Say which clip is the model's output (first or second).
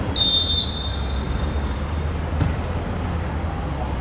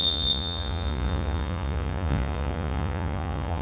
second